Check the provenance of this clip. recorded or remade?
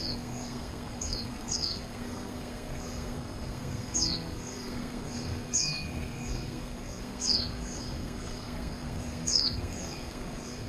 remade